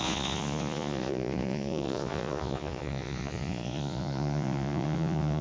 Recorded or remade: remade